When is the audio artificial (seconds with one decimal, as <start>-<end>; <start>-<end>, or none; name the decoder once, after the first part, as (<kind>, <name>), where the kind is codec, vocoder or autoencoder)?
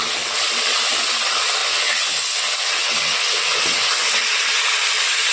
1.6-4.2 (vocoder, WaveNeXt)